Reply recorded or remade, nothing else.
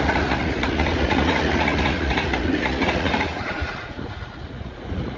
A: remade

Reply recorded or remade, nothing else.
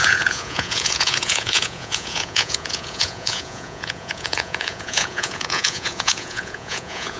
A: remade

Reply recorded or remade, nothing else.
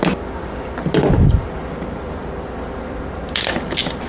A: recorded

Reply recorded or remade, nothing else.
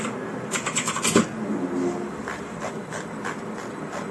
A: recorded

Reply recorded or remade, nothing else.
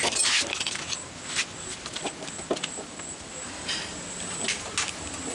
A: recorded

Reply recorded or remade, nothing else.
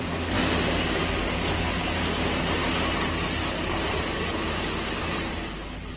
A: recorded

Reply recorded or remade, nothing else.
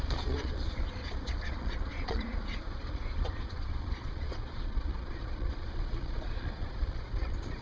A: remade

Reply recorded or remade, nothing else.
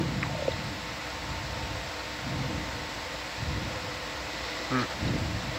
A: recorded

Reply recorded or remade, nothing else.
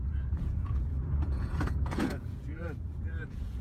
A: remade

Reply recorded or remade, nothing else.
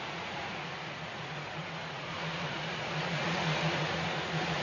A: remade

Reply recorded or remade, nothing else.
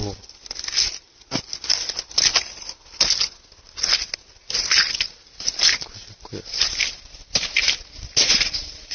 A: recorded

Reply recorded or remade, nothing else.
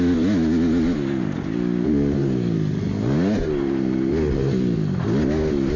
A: recorded